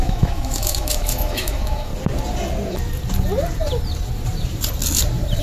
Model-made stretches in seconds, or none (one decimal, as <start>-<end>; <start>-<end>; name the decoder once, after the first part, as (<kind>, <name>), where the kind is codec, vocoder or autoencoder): 0.0-1.9 (autoencoder, DAC-VAE)